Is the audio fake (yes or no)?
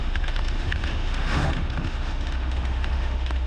yes